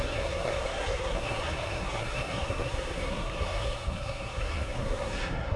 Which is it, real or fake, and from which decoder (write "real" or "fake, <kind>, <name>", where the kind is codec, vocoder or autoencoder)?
fake, codec, SNAC